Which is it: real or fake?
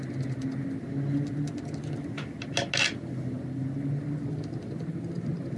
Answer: real